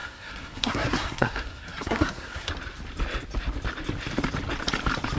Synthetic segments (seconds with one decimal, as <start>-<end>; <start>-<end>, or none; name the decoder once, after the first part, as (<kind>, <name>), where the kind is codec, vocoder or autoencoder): 0.0-2.5 (codec, SNAC)